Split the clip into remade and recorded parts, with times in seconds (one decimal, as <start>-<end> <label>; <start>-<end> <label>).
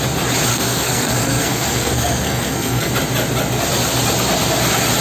0.0-0.5 recorded; 0.5-2.9 remade; 2.9-5.0 recorded